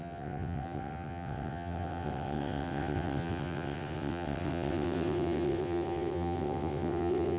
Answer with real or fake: fake